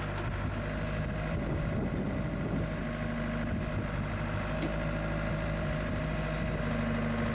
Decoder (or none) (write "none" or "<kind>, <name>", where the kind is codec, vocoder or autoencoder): none